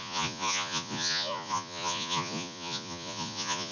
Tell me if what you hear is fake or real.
fake